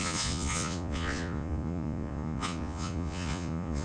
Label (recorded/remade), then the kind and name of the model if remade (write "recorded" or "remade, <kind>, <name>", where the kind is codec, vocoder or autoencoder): remade, vocoder, Vocos